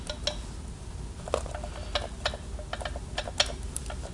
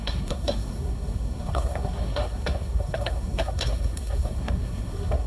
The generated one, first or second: second